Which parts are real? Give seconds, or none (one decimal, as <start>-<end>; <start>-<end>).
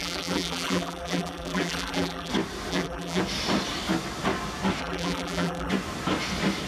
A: 2.3-2.7; 3.2-4.8; 5.7-6.7